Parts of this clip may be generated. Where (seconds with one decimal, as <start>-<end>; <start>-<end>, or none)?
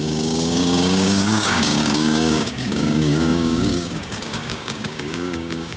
0.0-5.8